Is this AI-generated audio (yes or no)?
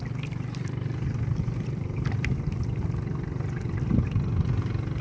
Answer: yes